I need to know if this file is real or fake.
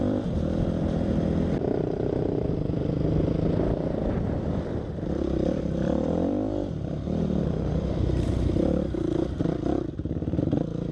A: fake